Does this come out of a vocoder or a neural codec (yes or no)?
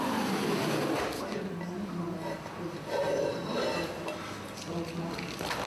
no